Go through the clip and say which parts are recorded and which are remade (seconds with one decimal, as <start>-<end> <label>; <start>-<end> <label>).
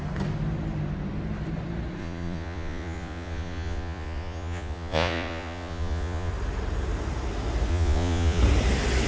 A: 0.0-2.0 recorded; 2.0-6.3 remade; 6.3-7.7 recorded; 7.7-8.4 remade; 8.4-9.1 recorded